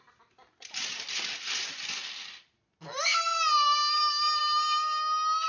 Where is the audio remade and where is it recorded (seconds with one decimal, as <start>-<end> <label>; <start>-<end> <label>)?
0.0-5.5 recorded